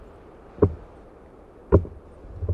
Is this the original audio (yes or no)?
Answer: yes